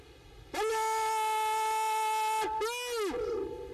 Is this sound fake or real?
real